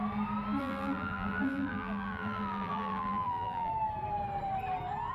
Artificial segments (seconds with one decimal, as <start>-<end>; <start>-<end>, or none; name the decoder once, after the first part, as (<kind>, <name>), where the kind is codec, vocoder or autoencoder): 0.6-3.7 (vocoder, BigVGAN v2)